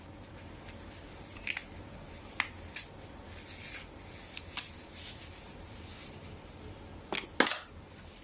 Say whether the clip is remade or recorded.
recorded